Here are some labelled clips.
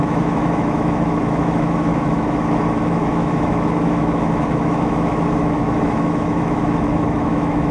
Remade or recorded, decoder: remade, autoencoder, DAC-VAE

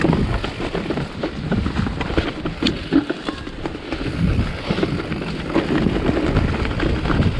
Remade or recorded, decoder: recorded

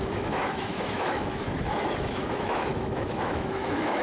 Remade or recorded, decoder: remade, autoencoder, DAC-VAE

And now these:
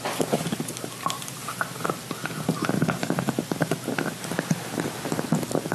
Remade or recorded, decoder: recorded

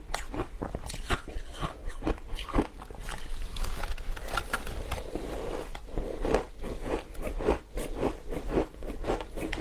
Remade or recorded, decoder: recorded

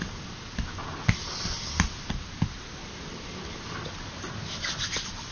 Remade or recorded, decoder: recorded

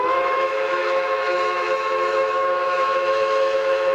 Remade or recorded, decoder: remade, autoencoder, DAC-VAE